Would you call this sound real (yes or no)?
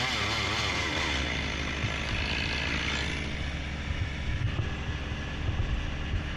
yes